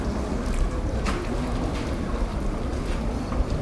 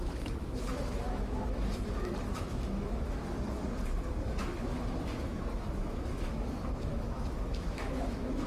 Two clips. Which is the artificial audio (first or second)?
second